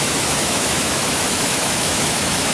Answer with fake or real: fake